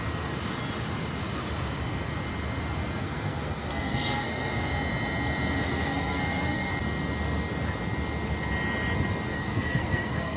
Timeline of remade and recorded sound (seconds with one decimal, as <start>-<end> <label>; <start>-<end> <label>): 0.0-3.0 recorded; 3.0-4.7 remade; 4.7-5.6 recorded; 5.6-6.7 remade; 6.7-9.3 recorded; 9.3-10.4 remade